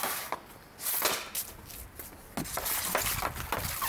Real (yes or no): yes